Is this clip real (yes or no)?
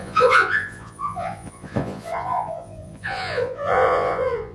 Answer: no